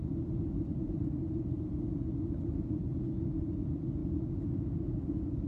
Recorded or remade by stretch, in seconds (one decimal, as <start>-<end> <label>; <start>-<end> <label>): 0.0-0.7 recorded; 0.7-1.8 remade; 1.8-5.5 recorded